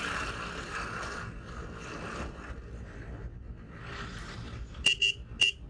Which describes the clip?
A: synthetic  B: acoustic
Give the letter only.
B